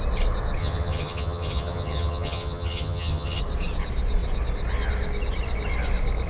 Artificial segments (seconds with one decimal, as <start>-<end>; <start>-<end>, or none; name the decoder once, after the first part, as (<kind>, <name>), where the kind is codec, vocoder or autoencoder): 0.6-3.4 (vocoder, HiFi-GAN)